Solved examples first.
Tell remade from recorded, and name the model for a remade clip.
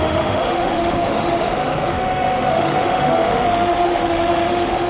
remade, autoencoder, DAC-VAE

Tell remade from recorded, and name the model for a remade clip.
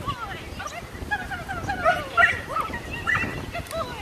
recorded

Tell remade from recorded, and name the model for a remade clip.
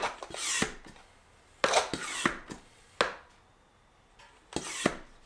recorded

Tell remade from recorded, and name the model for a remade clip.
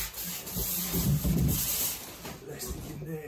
recorded